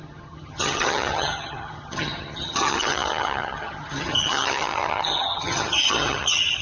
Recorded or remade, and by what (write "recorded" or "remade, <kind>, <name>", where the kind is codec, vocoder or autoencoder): remade, vocoder, HiFi-GAN